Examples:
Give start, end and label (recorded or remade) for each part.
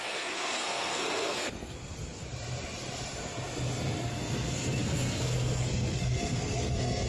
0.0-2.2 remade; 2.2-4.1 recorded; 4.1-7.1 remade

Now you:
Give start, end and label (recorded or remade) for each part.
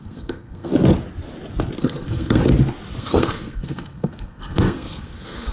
0.0-0.7 remade; 0.7-1.8 recorded; 1.8-2.4 remade; 2.4-3.0 recorded; 3.0-5.5 remade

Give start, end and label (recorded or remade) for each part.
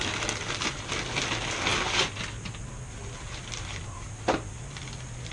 0.0-5.3 recorded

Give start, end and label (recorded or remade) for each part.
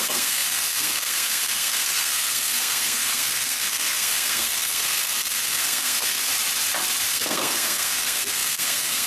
0.0-6.3 remade; 6.3-7.1 recorded; 7.1-9.1 remade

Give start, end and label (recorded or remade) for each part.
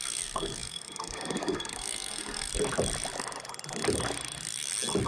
0.0-2.5 remade; 2.5-5.1 recorded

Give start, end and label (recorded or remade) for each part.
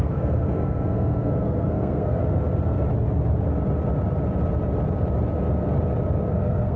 0.0-2.2 remade; 2.2-6.3 recorded; 6.3-6.8 remade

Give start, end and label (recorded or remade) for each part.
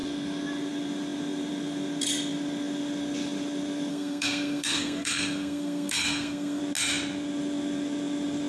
0.0-3.9 recorded; 3.9-6.6 remade; 6.6-8.5 recorded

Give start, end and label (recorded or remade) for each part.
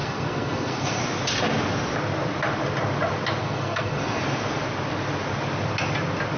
0.0-1.0 remade; 1.0-3.4 recorded; 3.4-4.2 remade; 4.2-6.4 recorded